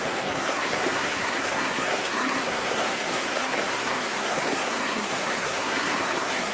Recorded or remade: remade